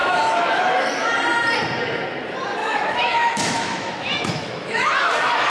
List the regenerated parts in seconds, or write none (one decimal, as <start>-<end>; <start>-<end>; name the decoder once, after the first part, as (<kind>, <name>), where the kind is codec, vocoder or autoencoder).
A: 0.0-0.9 (autoencoder, DAC-VAE); 2.6-4.9